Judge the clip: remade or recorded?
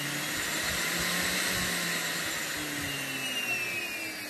recorded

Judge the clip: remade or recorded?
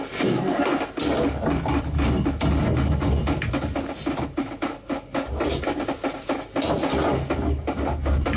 recorded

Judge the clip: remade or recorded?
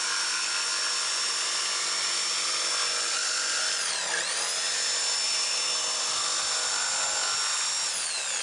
recorded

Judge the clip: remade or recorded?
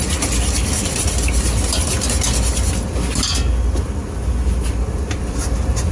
recorded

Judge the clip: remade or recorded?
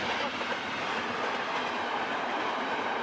recorded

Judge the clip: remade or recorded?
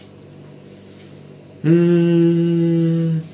recorded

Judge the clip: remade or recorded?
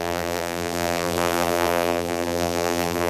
remade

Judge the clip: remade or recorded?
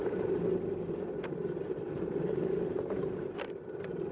remade